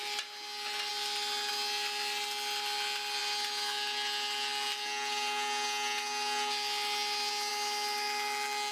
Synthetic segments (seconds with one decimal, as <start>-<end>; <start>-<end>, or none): none